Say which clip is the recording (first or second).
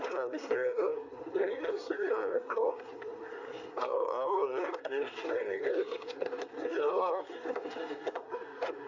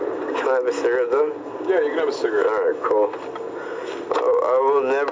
second